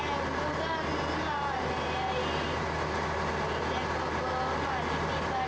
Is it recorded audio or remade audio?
recorded